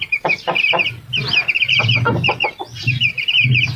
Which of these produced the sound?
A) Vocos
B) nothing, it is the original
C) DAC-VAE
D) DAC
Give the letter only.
B